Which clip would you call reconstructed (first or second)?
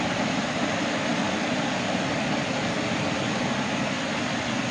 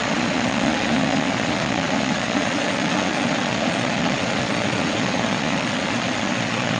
second